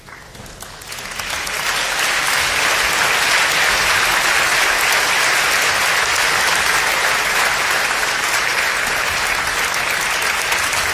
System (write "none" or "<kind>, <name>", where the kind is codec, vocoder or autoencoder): none